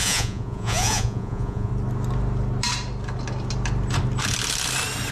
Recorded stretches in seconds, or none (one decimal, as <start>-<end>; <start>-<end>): 1.7-5.1